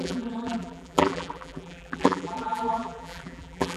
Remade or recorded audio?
remade